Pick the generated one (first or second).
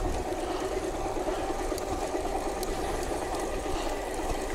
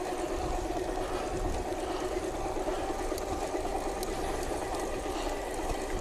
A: first